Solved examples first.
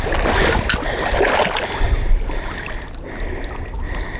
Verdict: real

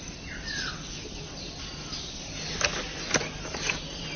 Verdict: real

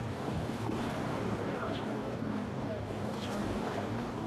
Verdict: fake